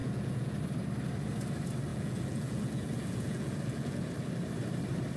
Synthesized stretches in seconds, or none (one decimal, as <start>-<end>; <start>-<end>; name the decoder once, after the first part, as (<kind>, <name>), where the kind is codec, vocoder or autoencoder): 0.0-0.6 (vocoder, Vocos); 1.9-4.1